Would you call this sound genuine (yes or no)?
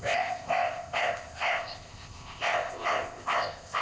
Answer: no